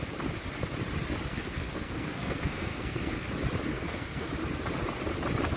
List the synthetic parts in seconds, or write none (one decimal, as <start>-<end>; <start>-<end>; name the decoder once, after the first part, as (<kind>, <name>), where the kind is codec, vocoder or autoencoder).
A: 1.3-3.3 (codec, SNAC); 3.7-4.3